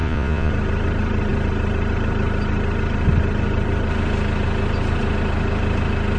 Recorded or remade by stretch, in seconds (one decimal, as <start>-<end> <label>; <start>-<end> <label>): 0.0-0.5 remade; 0.5-6.2 recorded